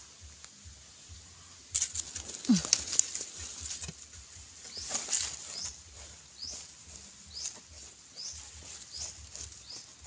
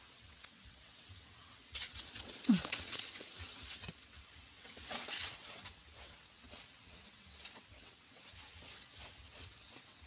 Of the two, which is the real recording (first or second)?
first